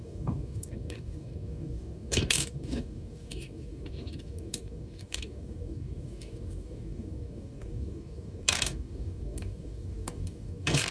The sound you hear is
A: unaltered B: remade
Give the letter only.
B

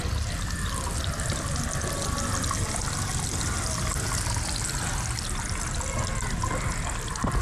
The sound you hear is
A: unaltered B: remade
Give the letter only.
A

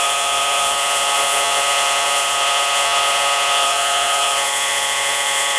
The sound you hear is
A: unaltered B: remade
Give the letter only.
B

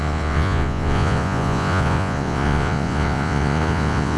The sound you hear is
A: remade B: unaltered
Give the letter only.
A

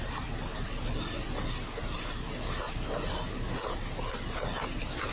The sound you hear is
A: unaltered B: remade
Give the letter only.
A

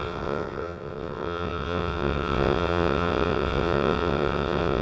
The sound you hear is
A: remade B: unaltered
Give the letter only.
A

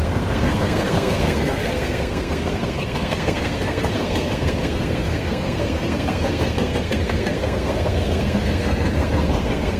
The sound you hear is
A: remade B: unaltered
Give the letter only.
A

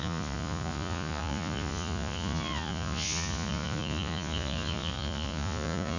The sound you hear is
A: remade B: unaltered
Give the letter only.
A